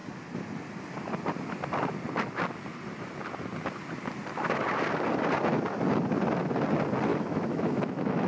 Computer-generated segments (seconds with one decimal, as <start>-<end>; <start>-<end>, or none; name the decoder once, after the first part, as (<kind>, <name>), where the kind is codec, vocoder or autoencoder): 7.1-8.3 (autoencoder, DAC-VAE)